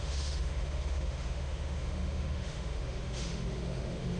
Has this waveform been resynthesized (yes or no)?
yes